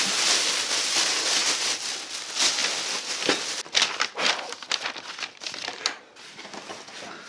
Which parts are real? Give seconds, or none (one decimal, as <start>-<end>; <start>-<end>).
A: 0.0-7.3